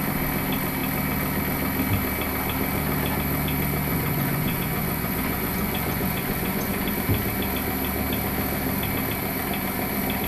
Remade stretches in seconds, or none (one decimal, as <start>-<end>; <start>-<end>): 3.9-6.9